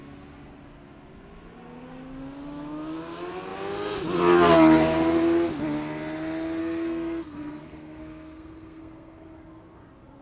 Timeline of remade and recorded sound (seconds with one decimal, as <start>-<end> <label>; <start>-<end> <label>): 0.0-6.6 recorded; 6.6-9.3 remade; 9.3-10.2 recorded